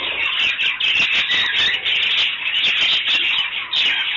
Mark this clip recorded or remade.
recorded